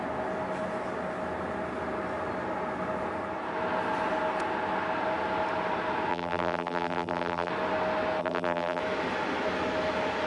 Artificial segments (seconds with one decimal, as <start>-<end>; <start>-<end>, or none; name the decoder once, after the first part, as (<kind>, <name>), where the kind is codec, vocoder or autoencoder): 6.1-7.5 (vocoder, BigVGAN v2); 8.2-8.8